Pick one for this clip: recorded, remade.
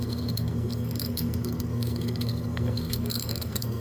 remade